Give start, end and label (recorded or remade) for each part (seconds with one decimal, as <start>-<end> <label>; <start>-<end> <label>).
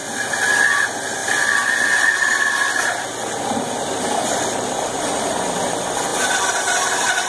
0.0-1.2 recorded; 1.2-5.4 remade; 5.4-6.1 recorded; 6.1-7.3 remade